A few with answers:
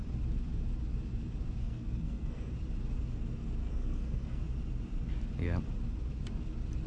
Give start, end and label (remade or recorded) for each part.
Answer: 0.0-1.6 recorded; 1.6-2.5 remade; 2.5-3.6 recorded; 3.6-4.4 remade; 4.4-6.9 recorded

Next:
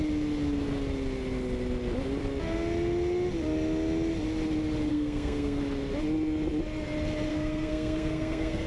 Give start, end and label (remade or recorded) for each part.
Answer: 0.0-4.9 recorded; 4.9-5.6 remade; 5.6-7.3 recorded; 7.3-8.7 remade

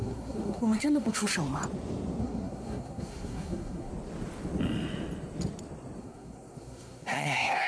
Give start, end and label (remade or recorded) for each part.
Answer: 0.0-1.3 remade; 1.3-2.2 recorded; 2.2-3.9 remade; 3.9-6.0 recorded; 6.0-7.7 remade